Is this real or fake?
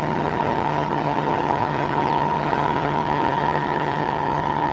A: fake